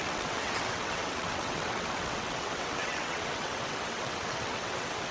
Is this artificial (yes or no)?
yes